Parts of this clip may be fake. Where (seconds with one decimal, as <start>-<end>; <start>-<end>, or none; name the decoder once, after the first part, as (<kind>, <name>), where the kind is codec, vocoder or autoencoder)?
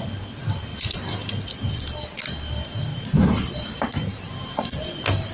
0.7-1.3 (vocoder, BigVGAN v2); 2.9-4.3